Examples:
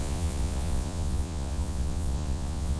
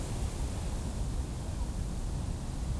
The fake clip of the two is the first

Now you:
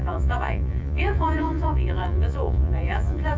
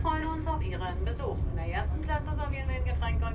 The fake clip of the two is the first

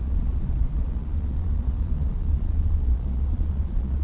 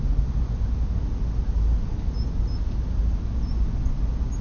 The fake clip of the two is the first